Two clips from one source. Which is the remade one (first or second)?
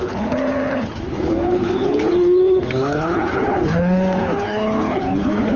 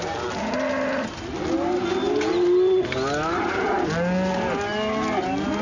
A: first